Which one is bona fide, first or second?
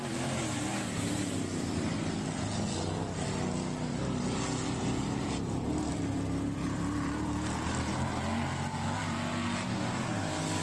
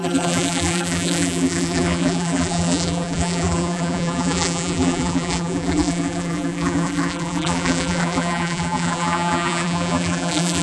first